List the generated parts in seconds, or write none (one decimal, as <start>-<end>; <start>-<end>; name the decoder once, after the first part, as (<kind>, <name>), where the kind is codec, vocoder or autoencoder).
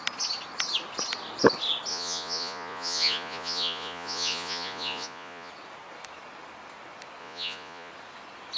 1.9-5.5 (vocoder, Vocos); 7.2-7.9